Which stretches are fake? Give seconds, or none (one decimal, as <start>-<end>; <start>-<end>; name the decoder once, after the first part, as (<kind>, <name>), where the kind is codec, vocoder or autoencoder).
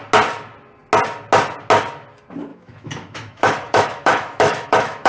2.5-5.1 (autoencoder, DAC-VAE)